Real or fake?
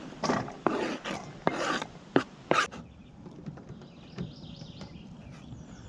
fake